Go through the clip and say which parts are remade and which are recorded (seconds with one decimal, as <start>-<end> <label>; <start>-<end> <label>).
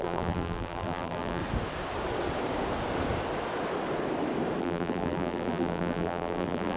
0.0-1.4 remade; 1.4-4.6 recorded; 4.6-6.8 remade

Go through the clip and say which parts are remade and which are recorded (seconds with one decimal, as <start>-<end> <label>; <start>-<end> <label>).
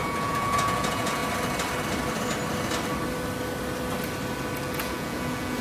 0.0-1.2 remade; 1.2-4.6 recorded; 4.6-5.6 remade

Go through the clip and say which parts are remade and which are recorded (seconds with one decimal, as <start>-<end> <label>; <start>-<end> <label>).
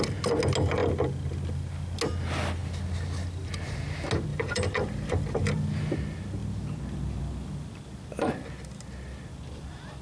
0.0-4.3 recorded; 4.3-5.8 remade; 5.8-10.0 recorded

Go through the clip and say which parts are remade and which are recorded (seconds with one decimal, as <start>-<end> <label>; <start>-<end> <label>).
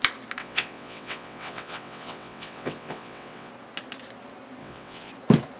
0.0-0.4 recorded; 0.4-3.5 remade; 3.5-4.6 recorded; 4.6-5.1 remade; 5.1-5.6 recorded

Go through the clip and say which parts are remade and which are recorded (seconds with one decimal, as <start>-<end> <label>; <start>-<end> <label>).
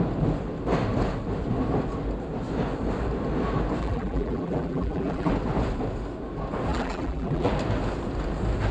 0.0-3.8 recorded; 3.8-5.3 remade; 5.3-6.7 recorded; 6.7-7.5 remade; 7.5-8.7 recorded